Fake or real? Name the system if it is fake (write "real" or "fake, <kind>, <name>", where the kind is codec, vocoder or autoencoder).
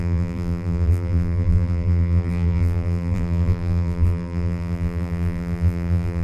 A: fake, vocoder, BigVGAN v2